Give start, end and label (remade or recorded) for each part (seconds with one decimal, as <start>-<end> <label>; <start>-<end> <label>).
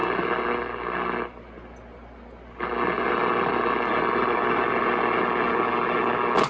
0.0-6.5 recorded